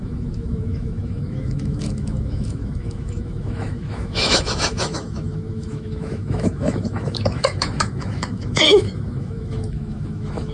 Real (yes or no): no